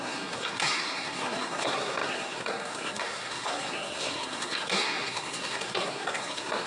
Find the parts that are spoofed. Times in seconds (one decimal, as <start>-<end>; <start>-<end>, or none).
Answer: 0.0-6.7